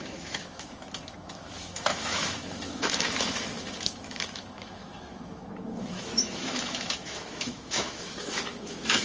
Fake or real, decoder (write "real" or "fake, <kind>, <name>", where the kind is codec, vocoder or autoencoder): fake, autoencoder, DAC-VAE